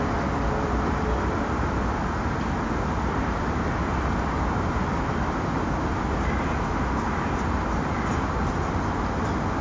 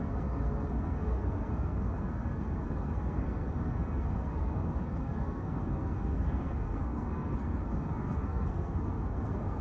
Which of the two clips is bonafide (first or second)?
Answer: first